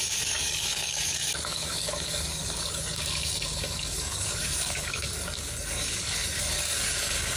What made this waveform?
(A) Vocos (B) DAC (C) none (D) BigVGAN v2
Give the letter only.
B